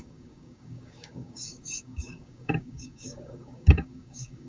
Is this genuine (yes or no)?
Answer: no